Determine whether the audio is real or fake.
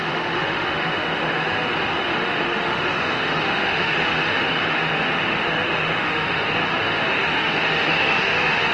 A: fake